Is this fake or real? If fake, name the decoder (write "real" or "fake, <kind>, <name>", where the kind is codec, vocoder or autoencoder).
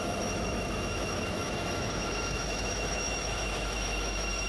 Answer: fake, autoencoder, DAC-VAE